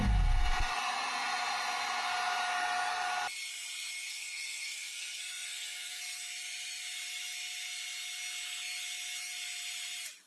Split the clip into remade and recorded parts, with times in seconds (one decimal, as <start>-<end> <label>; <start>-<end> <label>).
0.0-4.1 recorded; 4.1-6.0 remade; 6.0-10.3 recorded